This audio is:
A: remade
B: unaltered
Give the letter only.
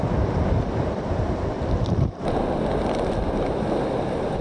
B